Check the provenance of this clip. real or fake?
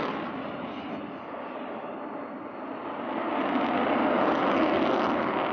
real